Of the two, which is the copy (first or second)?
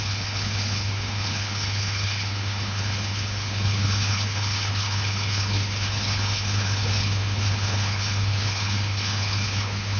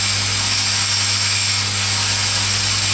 first